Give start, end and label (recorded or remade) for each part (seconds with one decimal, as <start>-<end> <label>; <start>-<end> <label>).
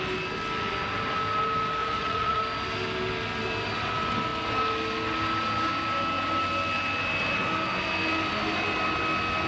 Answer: 0.0-1.8 recorded; 1.8-2.4 remade; 2.4-9.5 recorded